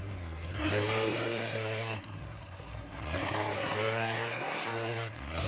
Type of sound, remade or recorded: remade